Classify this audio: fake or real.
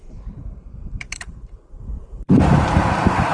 fake